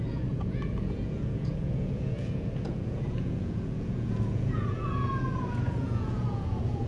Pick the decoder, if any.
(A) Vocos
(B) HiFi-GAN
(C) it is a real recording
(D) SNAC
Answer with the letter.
A